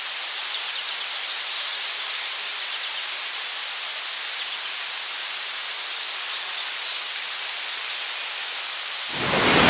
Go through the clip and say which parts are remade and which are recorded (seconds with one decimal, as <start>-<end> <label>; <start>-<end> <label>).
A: 0.0-0.8 recorded; 0.8-3.3 remade; 3.3-9.7 recorded